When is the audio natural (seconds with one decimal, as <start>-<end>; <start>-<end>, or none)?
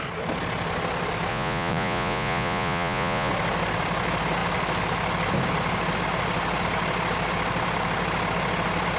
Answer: 0.0-1.3; 3.3-9.0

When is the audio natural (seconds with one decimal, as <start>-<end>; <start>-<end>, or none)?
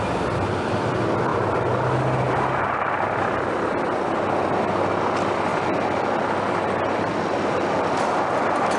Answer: 0.0-8.8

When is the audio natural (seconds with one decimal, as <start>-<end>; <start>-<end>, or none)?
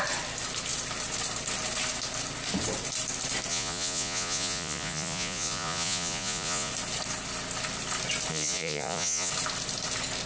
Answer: 0.0-3.5; 6.7-8.3; 9.3-10.3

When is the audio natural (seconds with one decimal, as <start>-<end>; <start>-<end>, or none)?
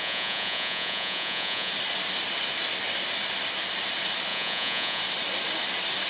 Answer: 1.7-4.3; 5.0-6.1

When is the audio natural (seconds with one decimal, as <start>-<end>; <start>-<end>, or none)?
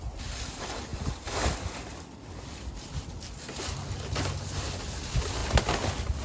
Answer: 0.0-6.2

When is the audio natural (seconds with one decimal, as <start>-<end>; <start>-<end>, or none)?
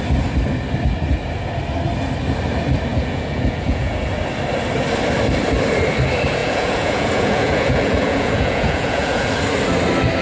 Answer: 0.0-2.9; 4.1-6.4; 9.3-10.2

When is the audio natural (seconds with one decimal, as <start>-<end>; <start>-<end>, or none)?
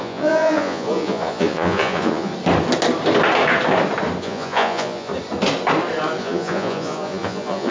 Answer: 2.3-4.2; 5.1-6.2